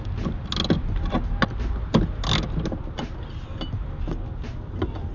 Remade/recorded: recorded